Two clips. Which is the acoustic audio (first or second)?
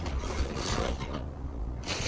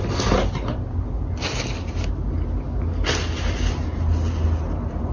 second